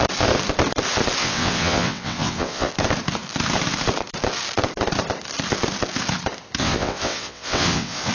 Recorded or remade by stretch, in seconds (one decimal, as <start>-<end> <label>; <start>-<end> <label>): 0.0-1.2 recorded; 1.2-2.7 remade; 2.7-6.6 recorded; 6.6-8.1 remade